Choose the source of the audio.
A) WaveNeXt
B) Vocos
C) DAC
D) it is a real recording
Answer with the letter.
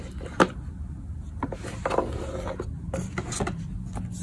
D